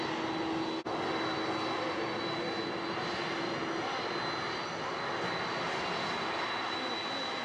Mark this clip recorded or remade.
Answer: recorded